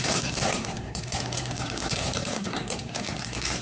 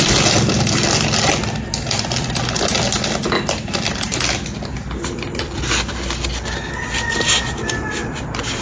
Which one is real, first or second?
second